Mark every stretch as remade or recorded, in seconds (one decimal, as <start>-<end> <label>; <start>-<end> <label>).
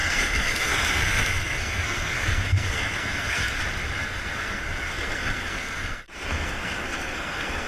0.0-3.6 remade; 3.6-4.0 recorded; 4.0-7.7 remade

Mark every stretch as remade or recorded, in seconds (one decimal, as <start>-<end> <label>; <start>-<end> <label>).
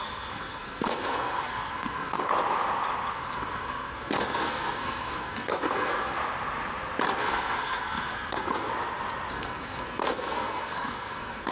0.0-2.3 remade; 2.3-3.1 recorded; 3.1-6.2 remade; 6.2-7.2 recorded; 7.2-8.7 remade; 8.7-9.3 recorded; 9.3-11.5 remade